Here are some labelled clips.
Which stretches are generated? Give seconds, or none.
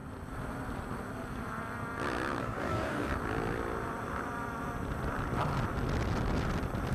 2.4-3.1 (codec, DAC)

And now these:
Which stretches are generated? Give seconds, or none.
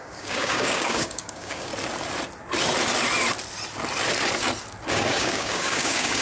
0.0-1.7 (codec, DAC); 4.9-6.2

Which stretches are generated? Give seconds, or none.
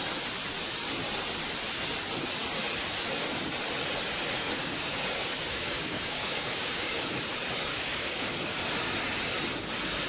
4.4-7.0 (codec, DAC); 7.7-8.3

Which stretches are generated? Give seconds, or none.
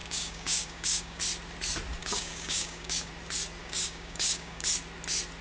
0.0-1.2 (codec, DAC); 2.0-3.1; 3.6-4.7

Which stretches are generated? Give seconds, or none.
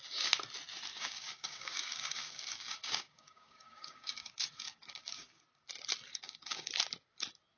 0.9-5.4 (codec, DAC); 6.1-6.7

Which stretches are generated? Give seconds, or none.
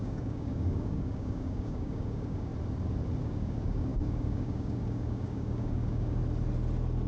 0.0-2.5 (codec, DAC); 3.2-6.2